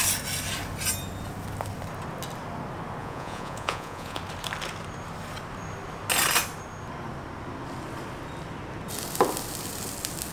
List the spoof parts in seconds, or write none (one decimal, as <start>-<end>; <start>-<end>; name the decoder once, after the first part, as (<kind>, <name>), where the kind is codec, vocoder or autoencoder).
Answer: 3.0-4.2 (vocoder, Vocos)